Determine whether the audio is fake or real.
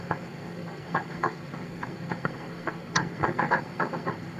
fake